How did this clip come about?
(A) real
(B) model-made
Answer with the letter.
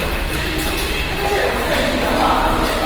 A